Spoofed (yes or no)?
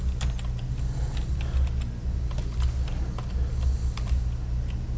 no